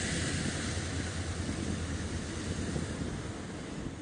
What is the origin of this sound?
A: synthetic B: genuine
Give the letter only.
B